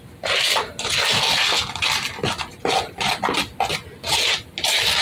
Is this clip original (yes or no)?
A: yes